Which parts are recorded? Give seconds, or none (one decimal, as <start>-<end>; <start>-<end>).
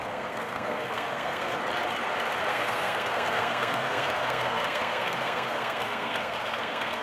1.5-2.5